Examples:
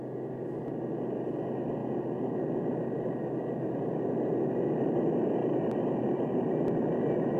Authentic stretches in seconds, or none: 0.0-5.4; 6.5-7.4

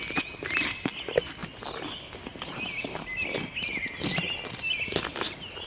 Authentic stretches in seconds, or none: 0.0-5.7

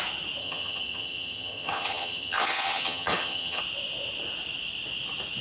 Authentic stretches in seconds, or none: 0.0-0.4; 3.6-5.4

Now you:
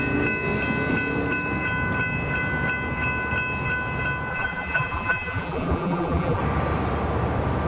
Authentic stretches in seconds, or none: 0.0-4.3; 6.4-7.7

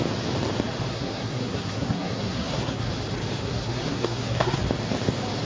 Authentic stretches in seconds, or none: 0.0-0.9; 2.9-3.4; 4.6-5.4

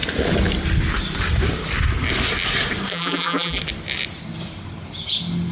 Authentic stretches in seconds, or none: 0.0-2.9; 3.6-5.5

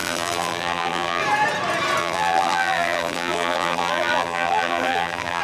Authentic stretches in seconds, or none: 1.2-2.0

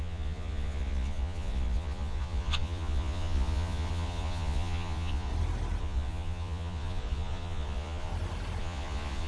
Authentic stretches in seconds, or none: 5.3-5.8; 8.1-8.6